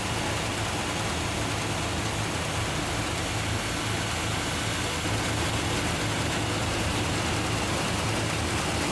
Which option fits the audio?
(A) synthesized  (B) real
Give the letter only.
B